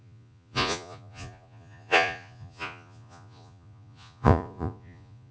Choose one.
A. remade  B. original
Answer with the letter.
A